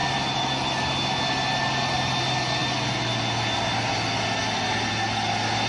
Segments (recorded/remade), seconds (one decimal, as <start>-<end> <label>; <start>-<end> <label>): 0.0-5.7 recorded